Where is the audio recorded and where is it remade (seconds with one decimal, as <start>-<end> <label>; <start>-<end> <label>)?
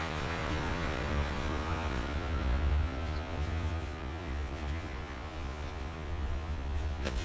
0.0-7.2 remade